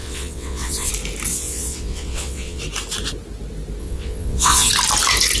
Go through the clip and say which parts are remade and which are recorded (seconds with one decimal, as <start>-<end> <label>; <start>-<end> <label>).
0.0-0.9 remade; 0.9-1.3 recorded; 1.3-2.6 remade; 2.6-3.8 recorded; 3.8-4.7 remade; 4.7-5.4 recorded